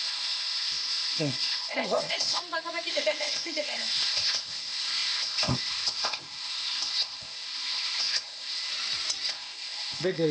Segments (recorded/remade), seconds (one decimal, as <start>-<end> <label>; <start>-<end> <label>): 0.0-2.4 remade; 2.4-2.9 recorded; 2.9-8.7 remade; 8.7-9.3 recorded; 9.3-10.3 remade